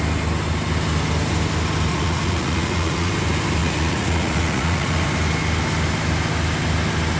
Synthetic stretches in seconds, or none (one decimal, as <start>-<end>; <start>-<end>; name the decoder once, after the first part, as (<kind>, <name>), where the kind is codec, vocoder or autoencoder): 1.9-3.1 (vocoder, Vocos); 3.6-5.0